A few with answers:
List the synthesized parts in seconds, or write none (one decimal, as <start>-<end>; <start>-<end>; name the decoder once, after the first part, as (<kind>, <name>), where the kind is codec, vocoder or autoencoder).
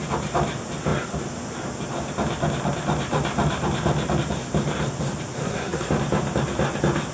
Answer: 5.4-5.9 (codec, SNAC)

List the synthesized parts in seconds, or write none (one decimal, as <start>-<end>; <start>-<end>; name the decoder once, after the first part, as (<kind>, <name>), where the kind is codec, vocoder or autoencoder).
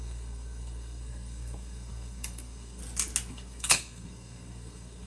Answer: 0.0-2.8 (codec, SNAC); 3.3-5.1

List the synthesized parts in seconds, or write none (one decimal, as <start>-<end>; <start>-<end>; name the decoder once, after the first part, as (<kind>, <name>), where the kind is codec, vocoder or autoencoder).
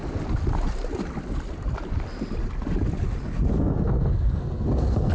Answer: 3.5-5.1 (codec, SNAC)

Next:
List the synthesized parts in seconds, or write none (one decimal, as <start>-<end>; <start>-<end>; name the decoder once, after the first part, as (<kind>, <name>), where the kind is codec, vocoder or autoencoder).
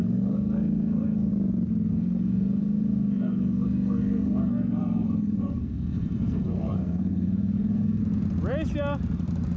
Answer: 0.0-1.3 (codec, SNAC); 1.9-8.0